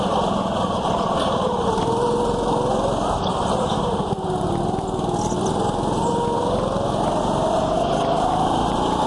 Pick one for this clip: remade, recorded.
recorded